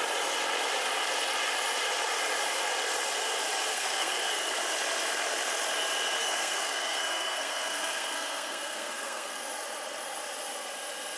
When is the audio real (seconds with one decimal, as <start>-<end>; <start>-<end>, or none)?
0.0-3.7; 4.5-6.2; 9.5-11.2